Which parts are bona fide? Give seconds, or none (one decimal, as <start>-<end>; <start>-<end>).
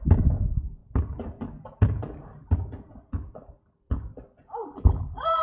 0.0-4.6